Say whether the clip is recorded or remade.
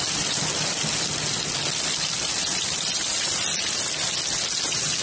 recorded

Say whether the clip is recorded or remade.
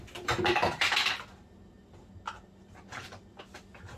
recorded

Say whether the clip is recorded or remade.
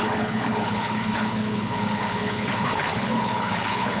remade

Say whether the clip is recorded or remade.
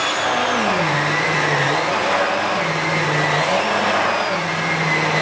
recorded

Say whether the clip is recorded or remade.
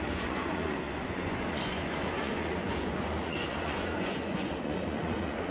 remade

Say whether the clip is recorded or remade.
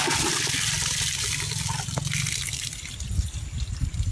remade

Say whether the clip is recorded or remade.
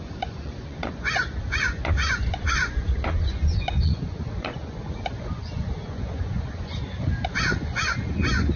remade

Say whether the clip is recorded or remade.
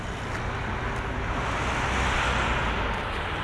recorded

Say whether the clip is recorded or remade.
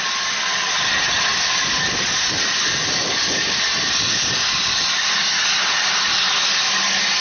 recorded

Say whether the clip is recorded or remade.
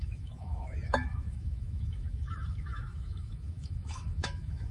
remade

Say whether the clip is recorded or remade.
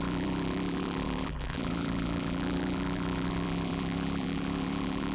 remade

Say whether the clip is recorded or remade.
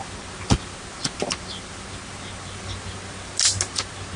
recorded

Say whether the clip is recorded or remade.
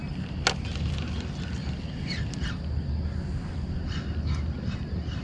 recorded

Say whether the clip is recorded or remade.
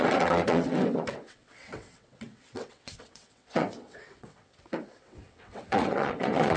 remade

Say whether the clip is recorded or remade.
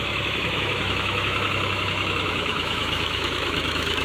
remade